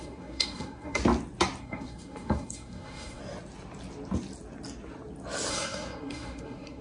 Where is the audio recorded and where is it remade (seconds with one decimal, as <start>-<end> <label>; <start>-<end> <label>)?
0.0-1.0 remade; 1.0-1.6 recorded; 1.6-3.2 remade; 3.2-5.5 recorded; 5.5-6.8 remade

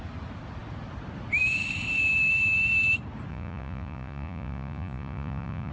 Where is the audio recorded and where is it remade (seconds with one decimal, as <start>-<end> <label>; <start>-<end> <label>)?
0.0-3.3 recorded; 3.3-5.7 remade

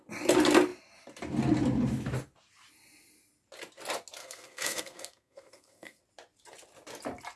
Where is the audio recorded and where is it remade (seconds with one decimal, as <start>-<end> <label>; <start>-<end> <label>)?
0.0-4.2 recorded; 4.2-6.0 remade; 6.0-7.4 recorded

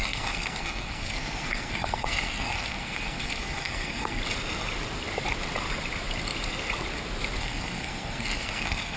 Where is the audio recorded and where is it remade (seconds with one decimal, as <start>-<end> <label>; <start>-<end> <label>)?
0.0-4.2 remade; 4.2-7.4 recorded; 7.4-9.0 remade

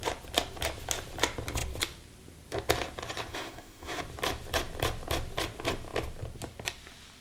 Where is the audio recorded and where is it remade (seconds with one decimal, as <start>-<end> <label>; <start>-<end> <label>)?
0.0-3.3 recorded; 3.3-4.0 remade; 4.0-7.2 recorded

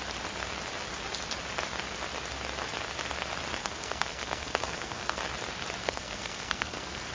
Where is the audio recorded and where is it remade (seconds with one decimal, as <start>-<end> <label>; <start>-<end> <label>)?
0.0-3.6 recorded; 3.6-5.2 remade; 5.2-5.8 recorded; 5.8-7.1 remade